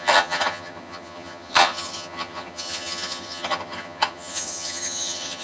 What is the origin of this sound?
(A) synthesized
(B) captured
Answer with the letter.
A